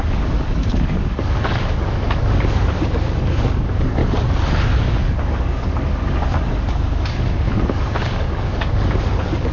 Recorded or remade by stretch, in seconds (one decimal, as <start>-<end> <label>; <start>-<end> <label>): 0.0-4.0 remade; 4.0-4.8 recorded; 4.8-9.5 remade

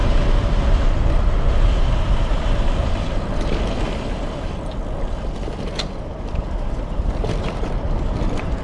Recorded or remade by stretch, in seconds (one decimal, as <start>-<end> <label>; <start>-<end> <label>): 0.0-8.6 recorded

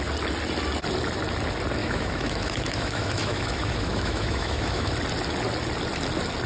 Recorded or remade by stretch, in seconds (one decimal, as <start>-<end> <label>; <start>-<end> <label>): 0.0-1.8 recorded; 1.8-4.9 remade; 4.9-6.5 recorded